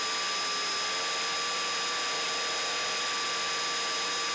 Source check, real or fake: real